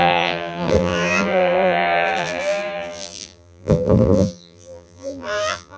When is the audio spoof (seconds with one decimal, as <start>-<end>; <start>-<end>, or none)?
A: 0.0-5.8